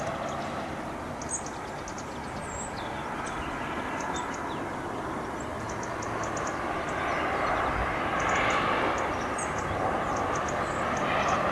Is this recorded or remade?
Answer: recorded